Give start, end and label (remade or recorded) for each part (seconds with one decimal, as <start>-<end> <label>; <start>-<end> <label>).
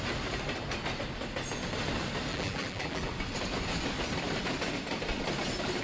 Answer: 0.0-2.3 recorded; 2.3-3.1 remade; 3.1-5.8 recorded